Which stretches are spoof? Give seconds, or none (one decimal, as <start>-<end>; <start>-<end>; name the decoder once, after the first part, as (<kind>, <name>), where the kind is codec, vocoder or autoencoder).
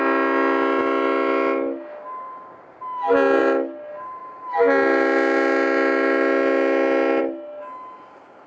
none